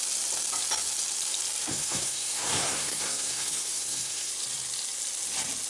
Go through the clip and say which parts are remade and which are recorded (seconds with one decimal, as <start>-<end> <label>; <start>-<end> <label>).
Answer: 0.0-1.7 recorded; 1.7-4.3 remade; 4.3-5.7 recorded